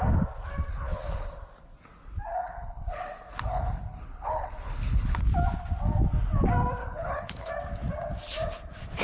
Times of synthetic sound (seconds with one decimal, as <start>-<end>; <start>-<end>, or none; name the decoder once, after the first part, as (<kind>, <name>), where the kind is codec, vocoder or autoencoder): 0.7-1.4 (codec, HILCodec); 2.3-5.2; 6.8-7.5